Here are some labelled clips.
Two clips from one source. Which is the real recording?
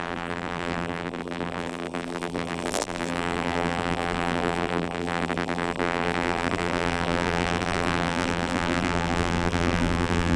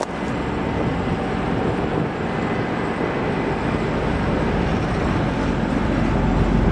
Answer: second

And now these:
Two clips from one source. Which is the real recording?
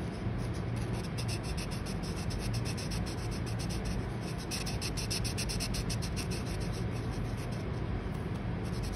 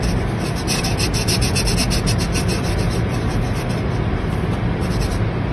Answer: first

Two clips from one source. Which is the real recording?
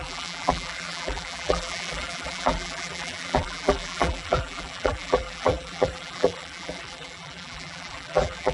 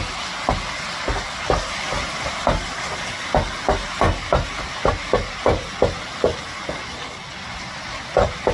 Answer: second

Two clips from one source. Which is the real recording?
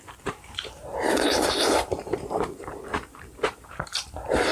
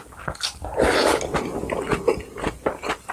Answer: second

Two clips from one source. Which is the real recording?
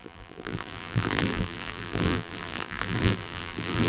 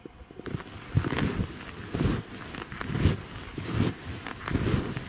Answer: second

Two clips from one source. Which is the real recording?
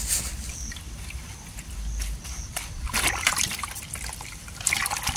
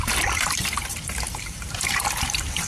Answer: first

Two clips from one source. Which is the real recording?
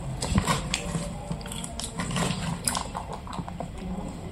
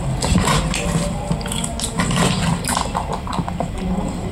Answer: second